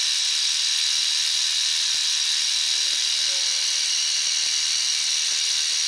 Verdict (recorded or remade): recorded